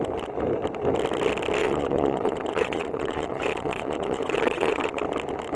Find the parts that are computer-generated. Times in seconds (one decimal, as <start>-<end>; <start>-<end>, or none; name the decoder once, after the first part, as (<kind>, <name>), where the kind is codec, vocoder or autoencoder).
1.6-5.0 (vocoder, WaveNeXt)